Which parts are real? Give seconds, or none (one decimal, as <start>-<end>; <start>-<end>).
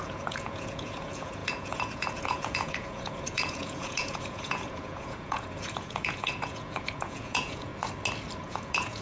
7.7-8.4